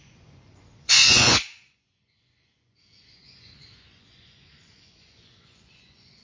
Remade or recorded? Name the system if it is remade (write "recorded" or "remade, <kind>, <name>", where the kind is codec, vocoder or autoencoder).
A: remade, vocoder, Vocos